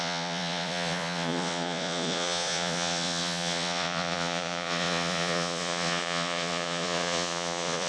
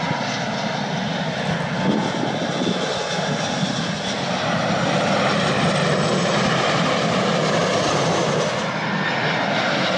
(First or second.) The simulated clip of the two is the first